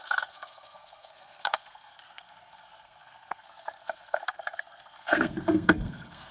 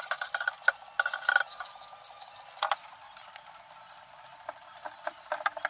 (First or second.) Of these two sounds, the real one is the second